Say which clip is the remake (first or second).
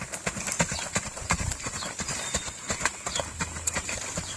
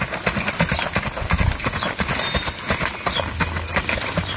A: first